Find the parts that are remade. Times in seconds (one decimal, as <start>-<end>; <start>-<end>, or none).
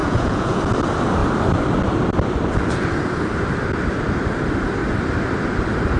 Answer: 0.0-0.6